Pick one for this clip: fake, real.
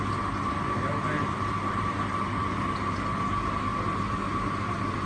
real